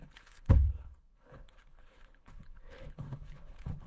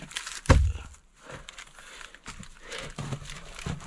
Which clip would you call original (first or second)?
second